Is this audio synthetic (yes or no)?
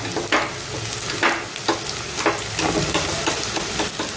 no